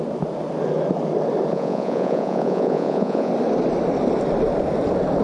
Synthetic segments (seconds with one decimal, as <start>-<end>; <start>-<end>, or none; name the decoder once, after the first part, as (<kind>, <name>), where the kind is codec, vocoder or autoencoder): 1.5-3.3 (vocoder, Vocos)